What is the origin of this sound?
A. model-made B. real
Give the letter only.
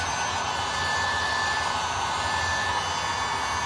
B